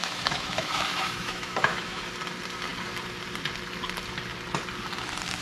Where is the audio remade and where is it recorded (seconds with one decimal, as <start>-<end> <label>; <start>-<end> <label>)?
0.0-2.0 remade; 2.0-5.4 recorded

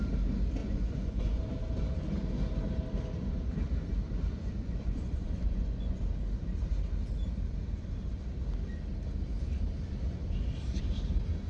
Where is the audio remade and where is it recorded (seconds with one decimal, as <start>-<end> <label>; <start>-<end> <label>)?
0.0-0.6 recorded; 0.6-1.4 remade; 1.4-4.6 recorded; 4.6-6.0 remade; 6.0-11.5 recorded

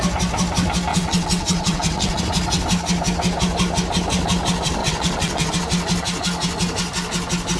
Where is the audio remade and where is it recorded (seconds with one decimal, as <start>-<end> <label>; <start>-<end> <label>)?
0.0-0.9 recorded; 0.9-2.2 remade; 2.2-4.8 recorded; 4.8-5.5 remade; 5.5-7.6 recorded

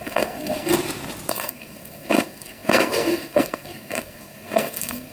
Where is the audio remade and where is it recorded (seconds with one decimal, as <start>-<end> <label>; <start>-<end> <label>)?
0.0-0.7 remade; 0.7-1.3 recorded; 1.3-5.1 remade

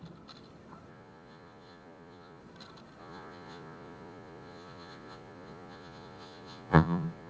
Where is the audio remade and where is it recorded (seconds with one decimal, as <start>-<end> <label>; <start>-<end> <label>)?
0.0-0.9 recorded; 0.9-2.4 remade; 2.4-3.0 recorded; 3.0-7.3 remade